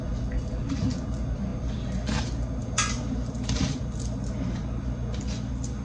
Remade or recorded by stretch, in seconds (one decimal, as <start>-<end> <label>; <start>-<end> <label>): 0.0-2.6 recorded; 2.6-4.2 remade; 4.2-5.8 recorded